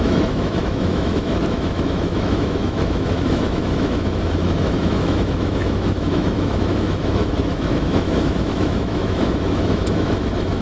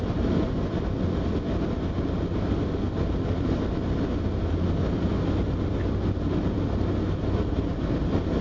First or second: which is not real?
first